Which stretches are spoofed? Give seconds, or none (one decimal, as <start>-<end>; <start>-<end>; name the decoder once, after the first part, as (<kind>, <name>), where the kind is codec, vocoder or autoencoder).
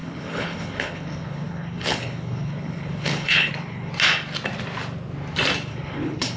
0.0-3.9 (codec, HILCodec); 5.7-6.4